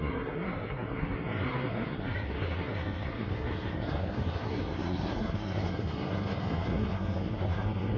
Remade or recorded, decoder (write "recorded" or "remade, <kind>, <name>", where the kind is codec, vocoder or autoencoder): remade, codec, SNAC